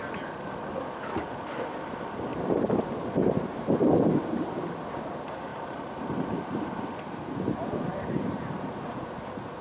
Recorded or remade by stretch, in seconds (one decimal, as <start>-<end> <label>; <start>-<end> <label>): 0.0-2.3 recorded; 2.3-2.9 remade; 2.9-5.5 recorded; 5.5-8.9 remade; 8.9-9.6 recorded